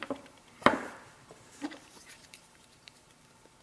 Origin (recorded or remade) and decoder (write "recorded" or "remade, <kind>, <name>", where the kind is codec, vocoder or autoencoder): remade, vocoder, BigVGAN v2